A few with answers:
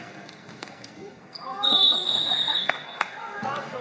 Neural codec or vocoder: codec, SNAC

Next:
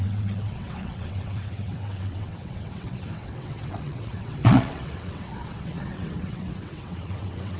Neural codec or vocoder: vocoder, WaveNeXt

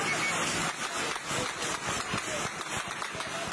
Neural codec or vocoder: none